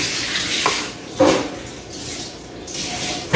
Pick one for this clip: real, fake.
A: real